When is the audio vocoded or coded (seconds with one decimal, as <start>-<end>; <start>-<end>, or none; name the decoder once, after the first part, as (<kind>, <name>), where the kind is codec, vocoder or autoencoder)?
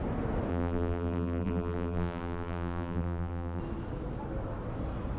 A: 0.5-3.6 (vocoder, BigVGAN v2)